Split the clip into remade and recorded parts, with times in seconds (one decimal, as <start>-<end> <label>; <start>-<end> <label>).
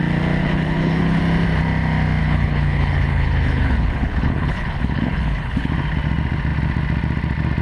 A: 0.0-0.4 recorded; 0.4-1.2 remade; 1.2-2.2 recorded; 2.2-5.7 remade; 5.7-7.6 recorded